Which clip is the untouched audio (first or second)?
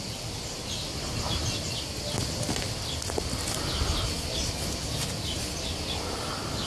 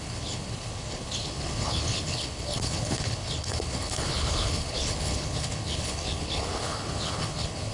first